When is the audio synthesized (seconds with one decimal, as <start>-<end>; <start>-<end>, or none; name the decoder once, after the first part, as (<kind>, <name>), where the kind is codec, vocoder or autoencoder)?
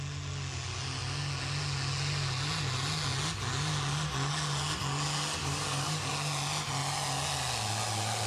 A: 5.4-6.1 (codec, DAC)